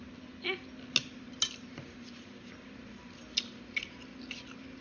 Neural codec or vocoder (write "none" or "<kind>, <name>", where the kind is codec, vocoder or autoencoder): none